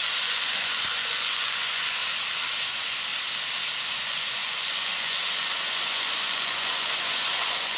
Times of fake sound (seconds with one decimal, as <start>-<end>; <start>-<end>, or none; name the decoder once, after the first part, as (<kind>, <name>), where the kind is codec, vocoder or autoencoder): 0.0-2.0 (vocoder, Vocos); 2.6-3.1; 3.9-7.8